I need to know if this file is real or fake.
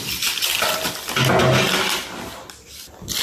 real